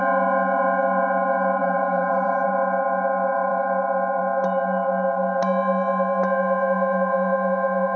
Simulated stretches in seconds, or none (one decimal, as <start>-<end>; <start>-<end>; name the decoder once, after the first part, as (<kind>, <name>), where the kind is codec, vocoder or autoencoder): 1.6-2.5 (vocoder, BigVGAN v2)